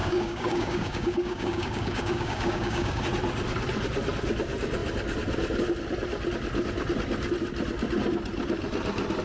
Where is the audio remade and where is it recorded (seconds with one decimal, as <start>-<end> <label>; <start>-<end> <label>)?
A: 0.0-3.0 remade; 3.0-9.2 recorded